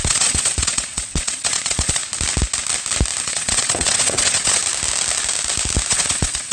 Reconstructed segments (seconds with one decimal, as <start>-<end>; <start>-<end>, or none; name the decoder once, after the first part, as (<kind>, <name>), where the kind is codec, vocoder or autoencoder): 0.0-2.0 (vocoder, WaveNeXt); 3.2-4.6; 5.9-6.5